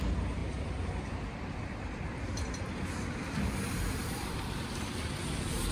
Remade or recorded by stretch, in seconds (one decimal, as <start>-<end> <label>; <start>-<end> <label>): 0.0-0.4 recorded; 0.4-2.2 remade; 2.2-3.2 recorded; 3.2-5.2 remade; 5.2-5.7 recorded